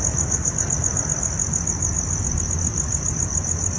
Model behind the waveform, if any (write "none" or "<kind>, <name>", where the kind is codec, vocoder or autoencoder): none